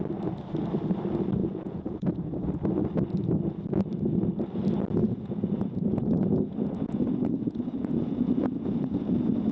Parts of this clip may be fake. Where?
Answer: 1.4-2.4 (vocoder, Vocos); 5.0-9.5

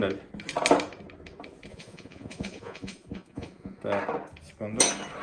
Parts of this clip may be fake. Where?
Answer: 1.7-3.8 (vocoder, Vocos)

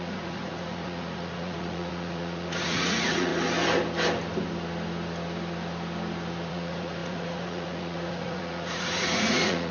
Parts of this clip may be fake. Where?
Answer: 0.0-3.3 (vocoder, Vocos); 6.5-9.7

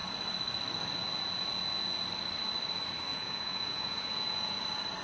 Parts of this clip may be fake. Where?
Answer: 3.1-4.6 (vocoder, Vocos)

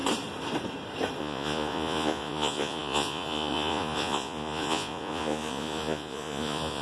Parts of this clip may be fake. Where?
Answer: 1.2-6.8 (vocoder, Vocos)